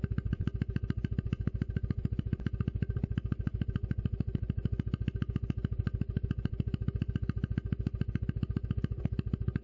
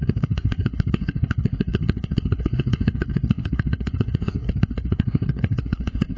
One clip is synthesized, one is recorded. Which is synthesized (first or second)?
second